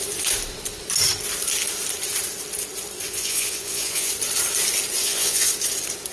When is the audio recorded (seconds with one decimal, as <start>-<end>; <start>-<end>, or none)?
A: 0.0-3.1; 4.1-5.0; 5.5-6.1